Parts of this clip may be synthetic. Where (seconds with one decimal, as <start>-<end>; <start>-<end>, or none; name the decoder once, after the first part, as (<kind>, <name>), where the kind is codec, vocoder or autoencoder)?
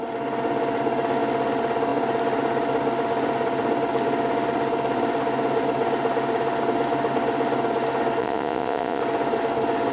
8.2-9.0 (vocoder, Vocos)